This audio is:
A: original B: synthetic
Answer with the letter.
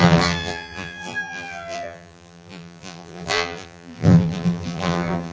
B